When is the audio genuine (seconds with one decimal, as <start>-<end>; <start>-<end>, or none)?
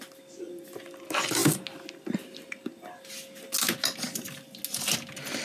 0.0-5.4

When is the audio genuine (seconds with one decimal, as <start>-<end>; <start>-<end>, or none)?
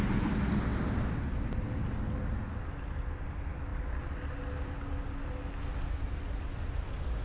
0.0-7.2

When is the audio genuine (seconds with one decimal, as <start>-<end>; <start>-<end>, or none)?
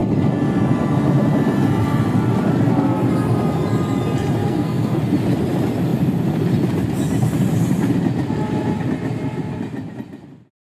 0.0-4.4; 5.0-10.7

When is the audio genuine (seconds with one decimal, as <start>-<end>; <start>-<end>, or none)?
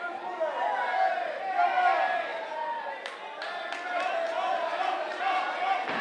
0.0-6.0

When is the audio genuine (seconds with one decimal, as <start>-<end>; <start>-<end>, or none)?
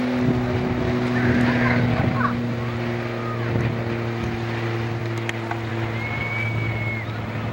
0.0-7.5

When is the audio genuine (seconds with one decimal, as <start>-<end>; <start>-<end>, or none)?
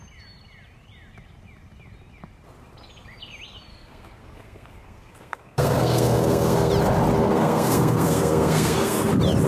0.0-3.7; 6.7-7.2; 9.1-9.5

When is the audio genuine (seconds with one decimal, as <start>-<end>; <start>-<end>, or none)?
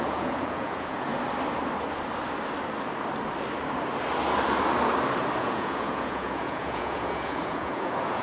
1.1-5.4